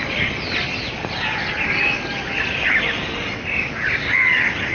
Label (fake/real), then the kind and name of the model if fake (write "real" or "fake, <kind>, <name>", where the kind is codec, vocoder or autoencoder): real